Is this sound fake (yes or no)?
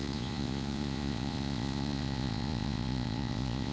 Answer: yes